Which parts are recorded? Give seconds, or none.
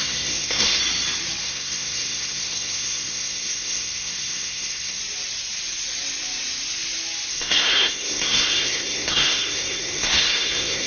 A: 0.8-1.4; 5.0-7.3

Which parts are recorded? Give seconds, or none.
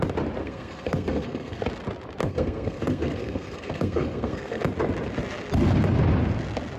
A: 0.0-0.4; 1.6-2.2; 4.6-6.8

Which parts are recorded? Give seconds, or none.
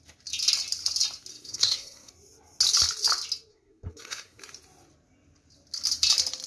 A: 0.0-1.3; 2.1-3.5; 4.4-6.5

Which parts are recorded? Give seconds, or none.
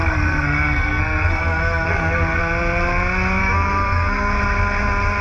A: 2.4-3.4; 4.3-5.2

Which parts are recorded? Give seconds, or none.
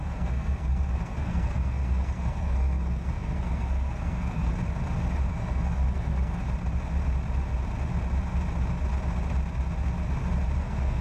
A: 4.5-5.3; 6.4-10.6